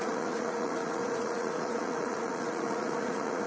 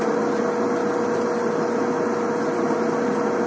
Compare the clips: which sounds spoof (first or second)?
first